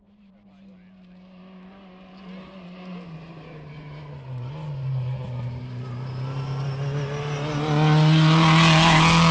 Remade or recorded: recorded